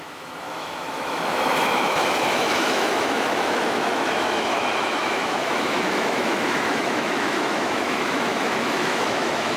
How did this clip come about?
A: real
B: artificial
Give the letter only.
B